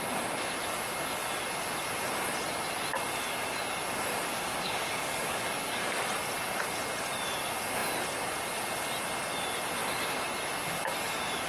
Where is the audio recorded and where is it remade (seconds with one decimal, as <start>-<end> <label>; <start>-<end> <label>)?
0.0-4.3 recorded; 4.3-6.0 remade; 6.0-11.5 recorded